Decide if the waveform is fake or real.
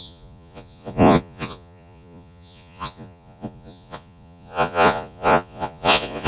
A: fake